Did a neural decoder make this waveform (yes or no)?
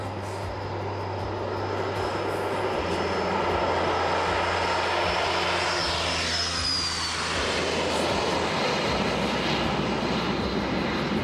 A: no